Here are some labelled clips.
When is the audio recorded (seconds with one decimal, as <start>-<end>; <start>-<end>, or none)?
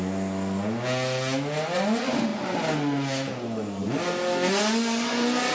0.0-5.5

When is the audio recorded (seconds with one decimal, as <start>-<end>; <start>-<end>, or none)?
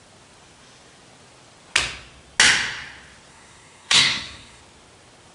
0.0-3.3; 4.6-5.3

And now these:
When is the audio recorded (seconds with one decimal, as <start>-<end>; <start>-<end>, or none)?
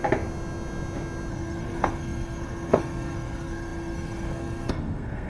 0.0-1.3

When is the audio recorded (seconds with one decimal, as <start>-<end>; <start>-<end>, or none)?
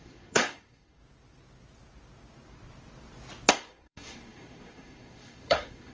1.0-3.5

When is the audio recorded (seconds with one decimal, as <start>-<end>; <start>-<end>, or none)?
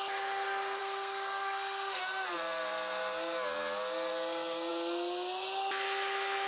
0.0-0.8; 2.0-6.5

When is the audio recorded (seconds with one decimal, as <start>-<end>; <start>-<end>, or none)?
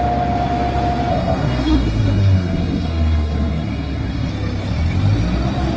0.0-1.1; 4.3-5.8